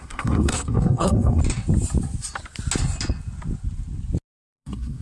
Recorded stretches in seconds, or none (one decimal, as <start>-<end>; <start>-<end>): 1.4-4.4